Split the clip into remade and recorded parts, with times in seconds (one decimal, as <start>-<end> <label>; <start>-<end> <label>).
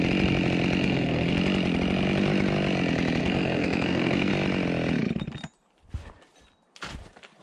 0.0-0.8 recorded; 0.8-1.4 remade; 1.4-3.2 recorded; 3.2-4.3 remade; 4.3-7.4 recorded